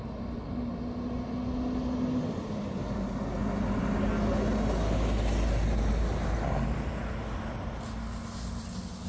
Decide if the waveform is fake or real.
real